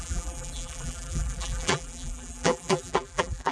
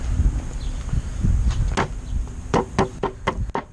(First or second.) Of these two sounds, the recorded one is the second